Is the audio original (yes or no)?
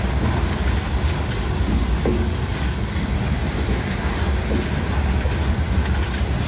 yes